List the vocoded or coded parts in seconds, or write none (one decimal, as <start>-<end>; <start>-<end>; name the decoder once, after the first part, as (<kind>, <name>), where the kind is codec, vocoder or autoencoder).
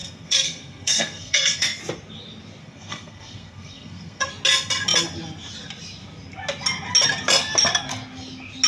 0.0-1.8 (codec, SNAC); 2.6-4.3